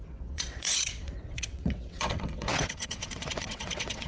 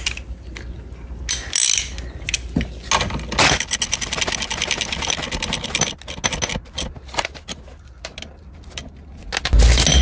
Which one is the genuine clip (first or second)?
second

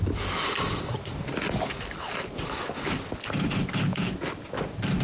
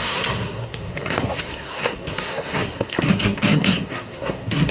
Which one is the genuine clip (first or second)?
first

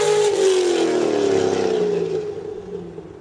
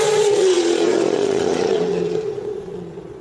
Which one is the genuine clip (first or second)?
first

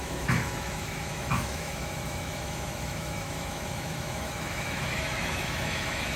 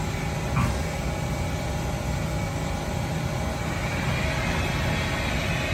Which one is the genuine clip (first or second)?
second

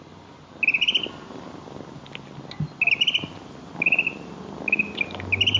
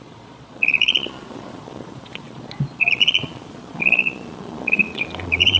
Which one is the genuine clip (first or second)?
first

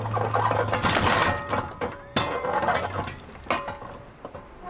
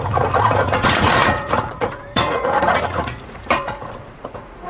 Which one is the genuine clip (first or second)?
first